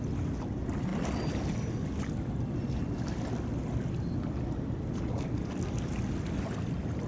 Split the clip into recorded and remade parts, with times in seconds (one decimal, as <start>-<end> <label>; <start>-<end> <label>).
0.0-7.1 recorded